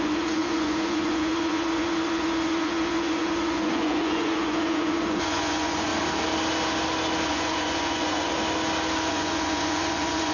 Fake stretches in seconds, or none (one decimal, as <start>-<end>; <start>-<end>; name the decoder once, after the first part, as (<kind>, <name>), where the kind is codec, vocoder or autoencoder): 0.0-5.9 (vocoder, Vocos); 7.3-8.3; 9.1-10.3